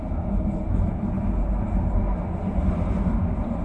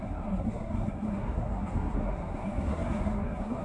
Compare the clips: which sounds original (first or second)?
first